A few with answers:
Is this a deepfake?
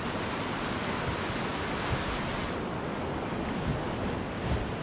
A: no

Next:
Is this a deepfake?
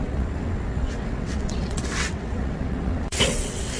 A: yes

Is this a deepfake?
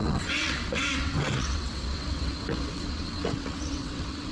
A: yes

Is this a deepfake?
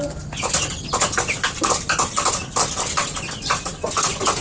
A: no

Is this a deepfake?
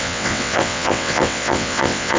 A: yes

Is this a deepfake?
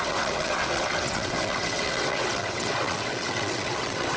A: yes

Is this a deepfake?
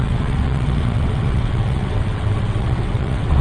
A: yes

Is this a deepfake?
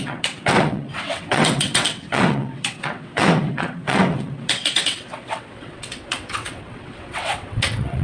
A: yes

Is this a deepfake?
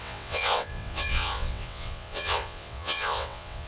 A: yes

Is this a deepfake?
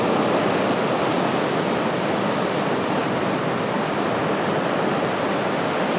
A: no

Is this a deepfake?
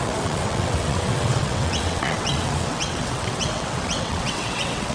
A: yes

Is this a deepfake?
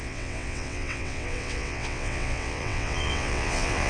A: yes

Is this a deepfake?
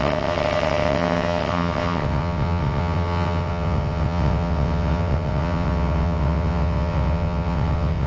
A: yes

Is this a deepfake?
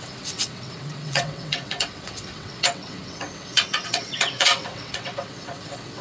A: yes